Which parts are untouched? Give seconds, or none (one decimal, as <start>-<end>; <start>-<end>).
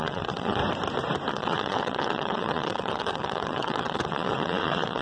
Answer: 0.6-1.3